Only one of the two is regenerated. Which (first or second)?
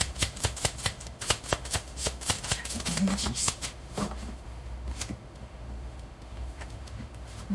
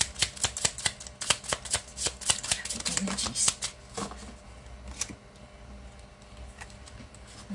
first